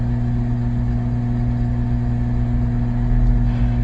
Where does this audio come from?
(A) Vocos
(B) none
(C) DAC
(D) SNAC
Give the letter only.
B